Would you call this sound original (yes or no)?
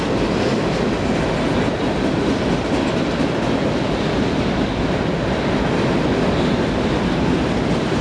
yes